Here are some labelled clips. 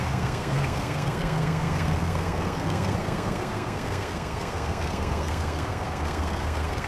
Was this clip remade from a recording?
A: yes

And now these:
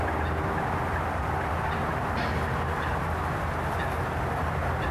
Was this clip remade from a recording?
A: no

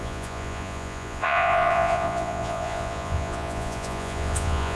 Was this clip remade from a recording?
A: yes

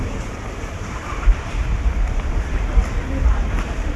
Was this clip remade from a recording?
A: yes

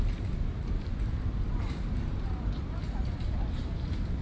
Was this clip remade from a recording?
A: yes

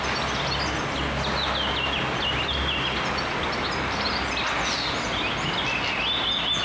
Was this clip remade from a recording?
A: no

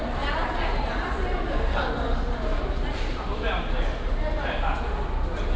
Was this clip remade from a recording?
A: no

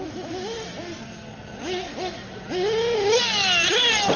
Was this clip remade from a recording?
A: no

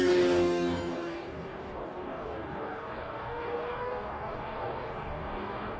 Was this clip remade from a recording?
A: yes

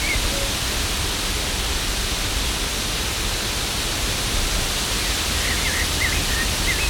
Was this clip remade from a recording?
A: no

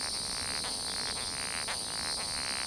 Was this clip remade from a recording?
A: no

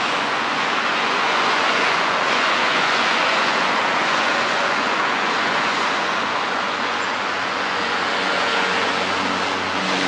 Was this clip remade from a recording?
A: yes